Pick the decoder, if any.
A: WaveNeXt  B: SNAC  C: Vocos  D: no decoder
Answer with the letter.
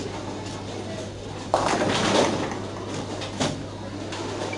D